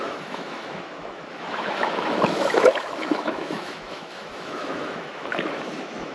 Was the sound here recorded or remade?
remade